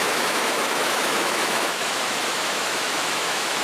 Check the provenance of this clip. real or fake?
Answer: fake